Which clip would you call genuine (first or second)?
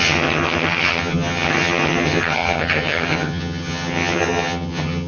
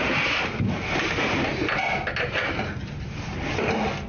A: second